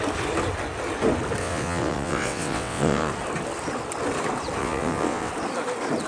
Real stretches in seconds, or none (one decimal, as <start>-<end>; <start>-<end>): 0.0-1.4; 3.1-4.6; 5.3-6.1